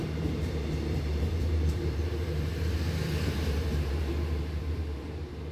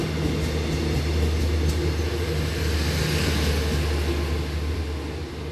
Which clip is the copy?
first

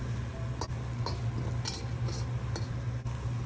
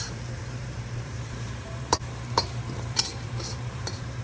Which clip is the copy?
second